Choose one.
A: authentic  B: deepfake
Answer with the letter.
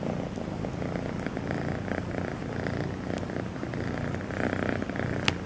A